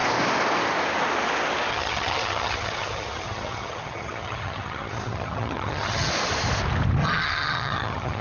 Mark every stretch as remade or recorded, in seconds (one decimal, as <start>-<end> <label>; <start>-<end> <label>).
0.0-1.7 recorded; 1.7-6.1 remade; 6.1-7.0 recorded; 7.0-8.2 remade